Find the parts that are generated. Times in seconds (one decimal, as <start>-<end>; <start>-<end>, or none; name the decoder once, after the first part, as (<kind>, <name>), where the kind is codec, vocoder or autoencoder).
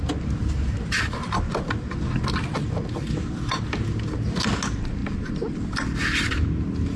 0.4-1.3 (vocoder, BigVGAN v2)